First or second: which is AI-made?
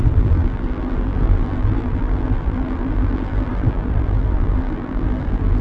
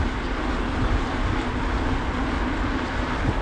first